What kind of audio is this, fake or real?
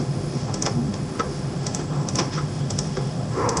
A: fake